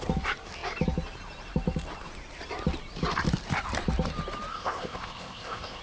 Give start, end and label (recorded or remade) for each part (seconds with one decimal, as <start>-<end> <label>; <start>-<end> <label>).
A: 0.0-4.5 recorded; 4.5-5.8 remade